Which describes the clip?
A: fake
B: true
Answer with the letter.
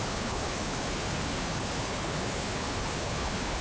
A